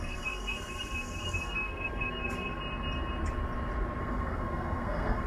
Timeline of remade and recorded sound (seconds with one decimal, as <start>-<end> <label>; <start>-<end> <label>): 0.0-2.6 remade; 2.6-4.0 recorded; 4.0-5.3 remade